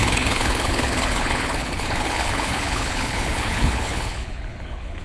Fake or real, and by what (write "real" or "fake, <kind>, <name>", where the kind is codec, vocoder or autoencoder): fake, codec, HILCodec